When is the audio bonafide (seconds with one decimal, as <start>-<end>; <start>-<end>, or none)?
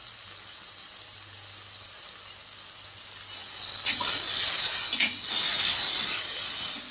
0.0-6.9